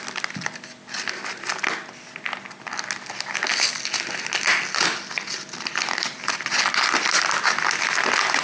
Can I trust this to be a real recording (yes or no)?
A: yes